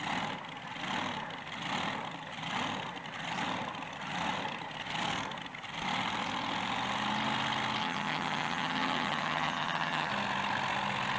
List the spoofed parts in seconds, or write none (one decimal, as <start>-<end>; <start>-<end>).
7.8-10.1